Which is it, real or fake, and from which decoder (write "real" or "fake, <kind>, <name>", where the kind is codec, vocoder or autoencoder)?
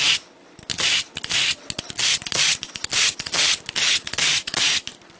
real